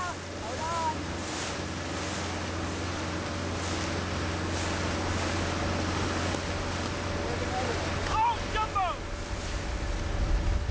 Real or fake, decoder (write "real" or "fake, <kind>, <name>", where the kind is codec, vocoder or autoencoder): real